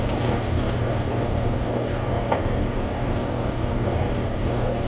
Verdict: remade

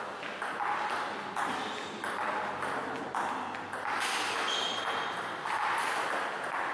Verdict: recorded